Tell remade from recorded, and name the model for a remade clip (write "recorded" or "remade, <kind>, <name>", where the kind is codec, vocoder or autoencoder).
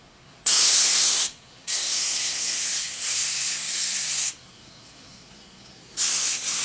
remade, codec, SNAC